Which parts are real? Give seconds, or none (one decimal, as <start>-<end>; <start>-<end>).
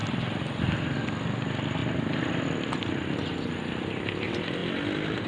0.0-5.3